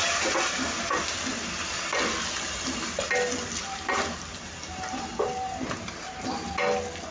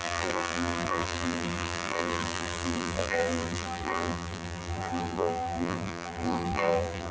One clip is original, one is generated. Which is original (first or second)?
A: first